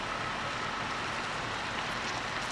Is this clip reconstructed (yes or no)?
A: no